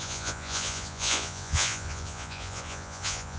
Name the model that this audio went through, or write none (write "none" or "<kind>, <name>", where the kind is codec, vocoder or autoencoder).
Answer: vocoder, Vocos